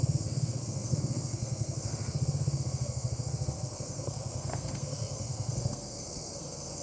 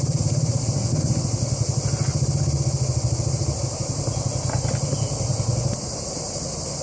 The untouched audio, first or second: second